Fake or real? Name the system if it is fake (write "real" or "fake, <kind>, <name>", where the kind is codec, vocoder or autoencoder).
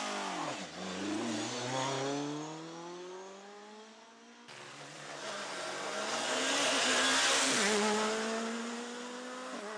real